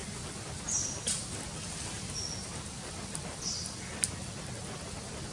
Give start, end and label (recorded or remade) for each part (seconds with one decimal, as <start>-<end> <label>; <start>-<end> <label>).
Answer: 0.0-5.3 recorded